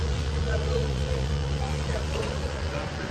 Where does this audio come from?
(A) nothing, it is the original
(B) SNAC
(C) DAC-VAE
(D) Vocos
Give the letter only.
D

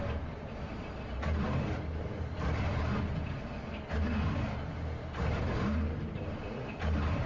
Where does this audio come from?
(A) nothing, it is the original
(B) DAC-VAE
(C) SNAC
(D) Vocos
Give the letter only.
A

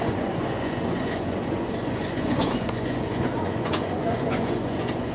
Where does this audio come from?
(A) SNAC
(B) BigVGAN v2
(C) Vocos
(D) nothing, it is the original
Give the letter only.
C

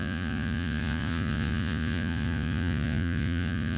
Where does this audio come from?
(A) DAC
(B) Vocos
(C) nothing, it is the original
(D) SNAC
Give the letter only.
B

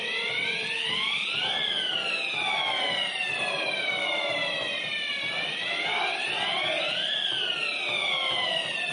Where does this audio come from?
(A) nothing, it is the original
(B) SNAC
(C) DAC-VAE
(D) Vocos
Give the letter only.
A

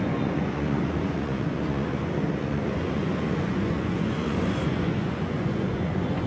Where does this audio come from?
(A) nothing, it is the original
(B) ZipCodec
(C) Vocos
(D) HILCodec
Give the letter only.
C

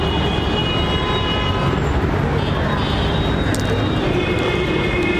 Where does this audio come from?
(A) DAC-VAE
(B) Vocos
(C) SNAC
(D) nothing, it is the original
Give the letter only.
D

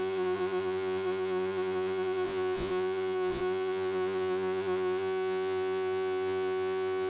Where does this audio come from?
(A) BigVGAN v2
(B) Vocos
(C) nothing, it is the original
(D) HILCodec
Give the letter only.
B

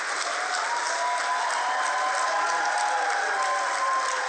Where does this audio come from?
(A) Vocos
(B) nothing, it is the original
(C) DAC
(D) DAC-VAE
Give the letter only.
B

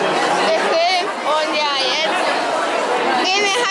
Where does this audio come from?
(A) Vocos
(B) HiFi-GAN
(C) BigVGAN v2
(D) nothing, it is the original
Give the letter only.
D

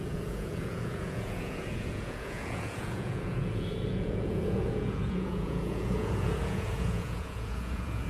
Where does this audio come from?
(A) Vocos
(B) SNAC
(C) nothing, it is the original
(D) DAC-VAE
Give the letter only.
A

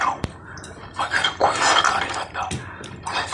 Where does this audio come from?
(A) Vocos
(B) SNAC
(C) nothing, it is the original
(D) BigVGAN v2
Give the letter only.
C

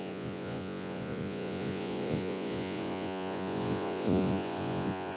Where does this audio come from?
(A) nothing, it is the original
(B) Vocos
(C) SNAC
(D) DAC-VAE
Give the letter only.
B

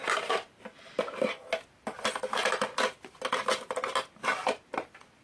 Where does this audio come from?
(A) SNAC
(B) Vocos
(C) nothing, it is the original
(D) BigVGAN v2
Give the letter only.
C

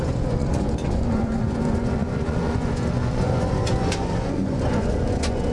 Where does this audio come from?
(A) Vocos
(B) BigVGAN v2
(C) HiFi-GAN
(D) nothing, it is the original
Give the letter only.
A